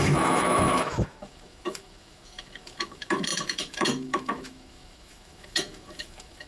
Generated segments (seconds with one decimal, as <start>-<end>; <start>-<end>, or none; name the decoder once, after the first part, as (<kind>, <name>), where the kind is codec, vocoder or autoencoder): 0.0-6.5 (autoencoder, DAC-VAE)